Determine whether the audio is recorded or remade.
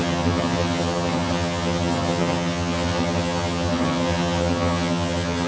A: remade